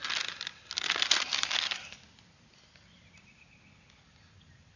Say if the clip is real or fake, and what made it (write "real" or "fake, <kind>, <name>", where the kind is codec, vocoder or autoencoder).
real